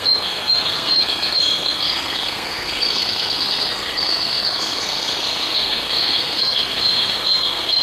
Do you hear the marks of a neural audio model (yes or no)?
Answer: yes